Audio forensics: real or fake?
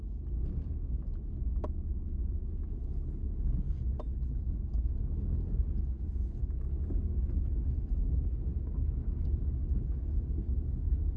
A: real